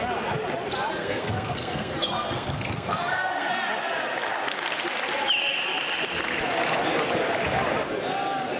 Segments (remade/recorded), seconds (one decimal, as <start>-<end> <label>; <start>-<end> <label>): 0.0-1.0 recorded; 1.0-3.5 remade; 3.5-8.6 recorded

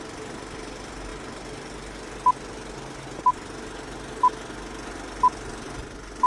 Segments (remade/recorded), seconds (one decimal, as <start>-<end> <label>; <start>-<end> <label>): 0.0-6.3 recorded